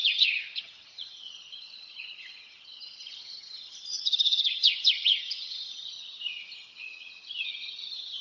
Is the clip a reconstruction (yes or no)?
yes